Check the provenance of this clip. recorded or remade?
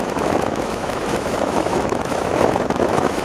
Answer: remade